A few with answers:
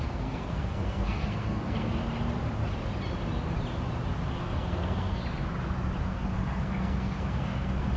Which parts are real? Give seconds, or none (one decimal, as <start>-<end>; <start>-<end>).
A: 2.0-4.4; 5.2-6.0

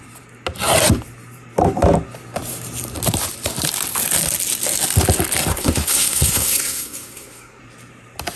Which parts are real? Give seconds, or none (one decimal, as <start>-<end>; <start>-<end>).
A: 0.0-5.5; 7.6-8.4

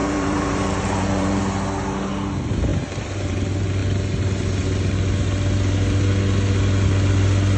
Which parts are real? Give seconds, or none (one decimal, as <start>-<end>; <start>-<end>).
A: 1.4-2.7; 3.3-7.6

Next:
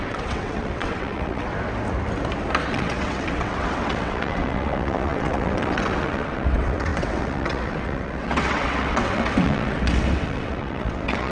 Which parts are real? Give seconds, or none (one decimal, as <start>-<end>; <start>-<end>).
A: 1.5-2.7

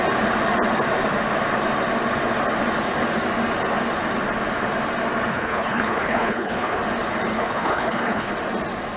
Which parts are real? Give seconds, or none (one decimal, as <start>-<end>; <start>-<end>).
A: 0.0-5.3; 6.8-7.3; 8.3-9.0

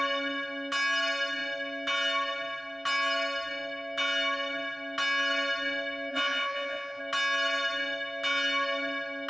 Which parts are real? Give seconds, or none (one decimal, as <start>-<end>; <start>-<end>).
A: 0.0-6.1; 7.0-9.3